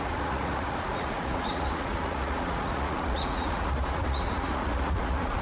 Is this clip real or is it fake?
fake